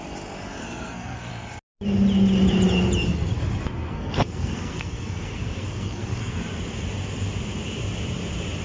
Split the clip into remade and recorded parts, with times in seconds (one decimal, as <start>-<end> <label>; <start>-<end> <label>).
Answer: 0.0-0.6 recorded; 0.6-1.3 remade; 1.3-3.8 recorded; 3.8-6.4 remade; 6.4-8.6 recorded